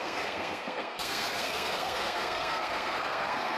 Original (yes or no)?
no